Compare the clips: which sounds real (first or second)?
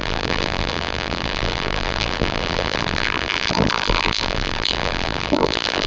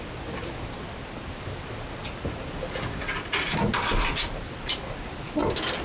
second